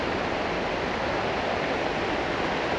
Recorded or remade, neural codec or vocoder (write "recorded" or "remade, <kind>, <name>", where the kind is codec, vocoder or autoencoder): recorded